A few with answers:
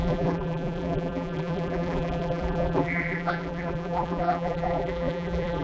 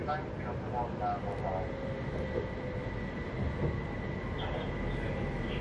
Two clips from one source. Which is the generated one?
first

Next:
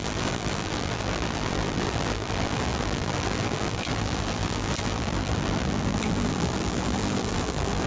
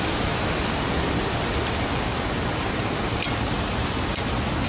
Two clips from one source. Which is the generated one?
first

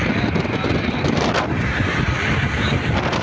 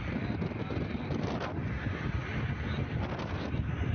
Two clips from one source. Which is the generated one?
first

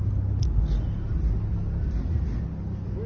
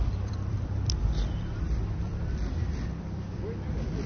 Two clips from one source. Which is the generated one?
second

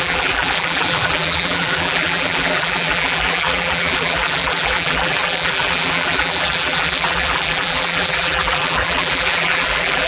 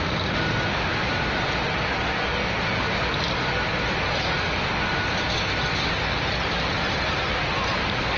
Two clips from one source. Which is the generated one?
first